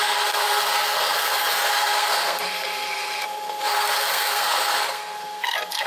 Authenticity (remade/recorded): remade